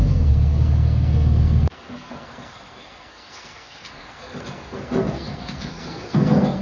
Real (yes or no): no